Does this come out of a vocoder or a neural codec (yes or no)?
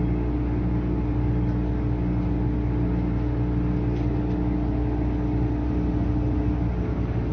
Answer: no